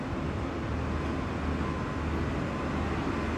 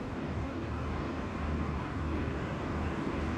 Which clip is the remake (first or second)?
second